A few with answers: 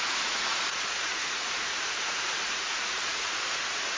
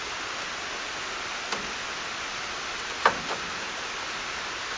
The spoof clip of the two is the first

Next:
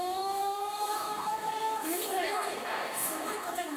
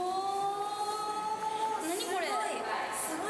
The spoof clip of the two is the first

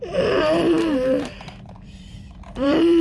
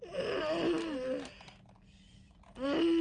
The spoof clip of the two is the first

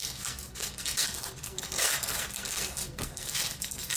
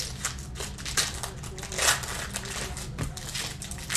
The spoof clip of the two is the first